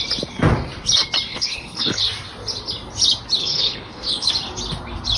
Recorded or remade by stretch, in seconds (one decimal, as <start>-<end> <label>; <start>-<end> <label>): 0.0-1.3 recorded; 1.3-2.0 remade; 2.0-3.4 recorded; 3.4-4.3 remade; 4.3-5.2 recorded